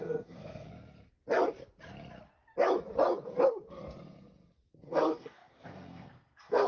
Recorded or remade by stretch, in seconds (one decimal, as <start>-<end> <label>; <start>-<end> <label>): 0.0-0.7 remade; 0.7-4.7 recorded; 4.7-6.7 remade